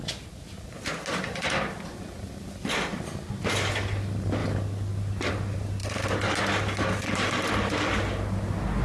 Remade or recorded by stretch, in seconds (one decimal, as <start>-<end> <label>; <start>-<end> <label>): 0.0-8.8 recorded